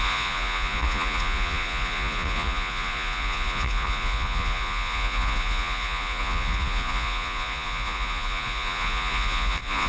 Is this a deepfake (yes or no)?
yes